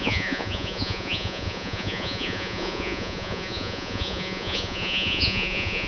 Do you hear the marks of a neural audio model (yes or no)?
yes